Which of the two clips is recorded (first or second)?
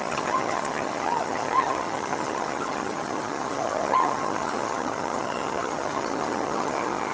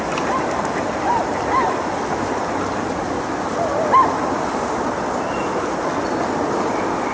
second